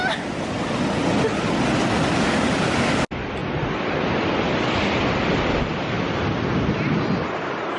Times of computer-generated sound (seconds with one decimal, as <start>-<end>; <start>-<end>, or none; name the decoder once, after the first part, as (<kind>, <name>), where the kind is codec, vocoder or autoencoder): none